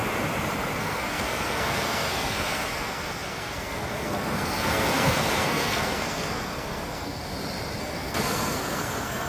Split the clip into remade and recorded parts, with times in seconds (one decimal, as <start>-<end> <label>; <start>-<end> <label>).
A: 0.0-0.8 recorded; 0.8-7.3 remade; 7.3-7.8 recorded; 7.8-9.3 remade